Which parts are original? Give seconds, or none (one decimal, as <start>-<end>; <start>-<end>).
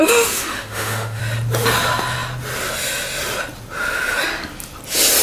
1.2-5.2